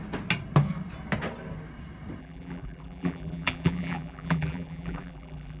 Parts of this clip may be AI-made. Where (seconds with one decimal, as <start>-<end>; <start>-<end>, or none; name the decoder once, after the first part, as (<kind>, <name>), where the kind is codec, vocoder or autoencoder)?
2.2-5.6 (vocoder, BigVGAN v2)

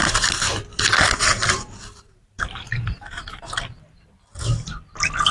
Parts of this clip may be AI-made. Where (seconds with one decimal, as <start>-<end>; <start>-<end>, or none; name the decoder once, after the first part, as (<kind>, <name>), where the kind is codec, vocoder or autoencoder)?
1.3-4.1 (vocoder, BigVGAN v2)

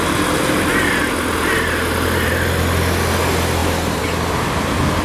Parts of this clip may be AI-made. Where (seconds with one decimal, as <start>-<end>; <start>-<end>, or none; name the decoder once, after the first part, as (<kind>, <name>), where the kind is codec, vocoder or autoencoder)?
none

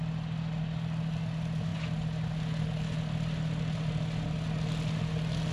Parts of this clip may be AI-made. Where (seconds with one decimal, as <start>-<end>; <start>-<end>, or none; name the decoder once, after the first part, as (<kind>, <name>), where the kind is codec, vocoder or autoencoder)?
none

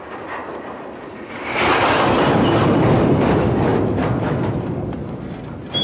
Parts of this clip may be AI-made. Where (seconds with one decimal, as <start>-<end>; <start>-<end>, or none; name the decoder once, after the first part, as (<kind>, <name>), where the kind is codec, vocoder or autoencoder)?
none